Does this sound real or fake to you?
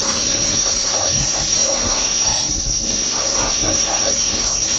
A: fake